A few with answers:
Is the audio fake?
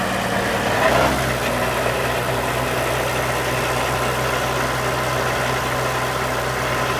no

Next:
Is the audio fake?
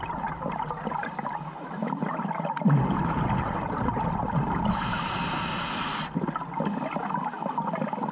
no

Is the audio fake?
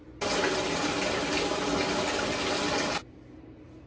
no